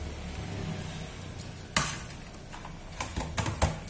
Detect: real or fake real